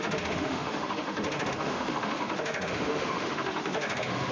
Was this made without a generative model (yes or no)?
no